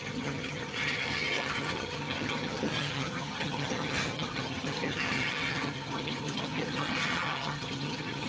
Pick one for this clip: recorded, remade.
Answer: remade